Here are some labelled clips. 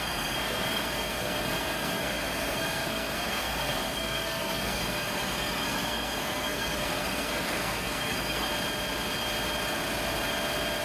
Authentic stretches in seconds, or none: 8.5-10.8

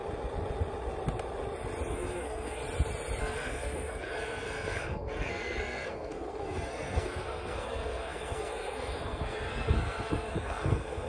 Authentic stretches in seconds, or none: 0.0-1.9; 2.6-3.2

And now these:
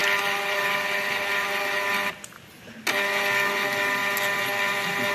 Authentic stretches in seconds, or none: 2.5-5.1

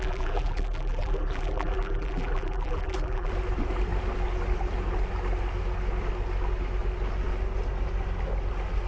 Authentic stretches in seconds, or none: 3.3-8.9

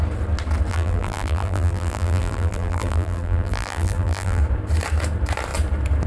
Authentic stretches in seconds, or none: 0.0-0.7; 4.4-6.1